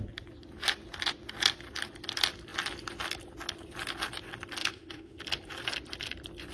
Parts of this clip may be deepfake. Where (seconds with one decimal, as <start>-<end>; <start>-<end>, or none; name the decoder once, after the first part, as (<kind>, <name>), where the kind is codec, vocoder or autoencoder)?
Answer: 4.6-5.2 (autoencoder, DAC-VAE)